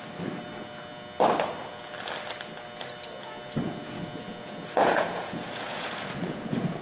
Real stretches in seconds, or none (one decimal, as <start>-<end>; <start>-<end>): 0.0-4.4